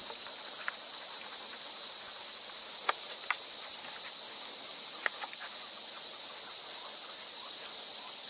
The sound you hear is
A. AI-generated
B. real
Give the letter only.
B